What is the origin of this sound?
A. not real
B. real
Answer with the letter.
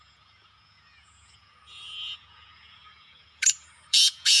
A